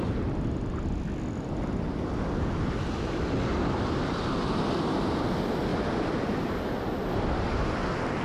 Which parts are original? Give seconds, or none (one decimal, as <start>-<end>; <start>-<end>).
0.0-8.2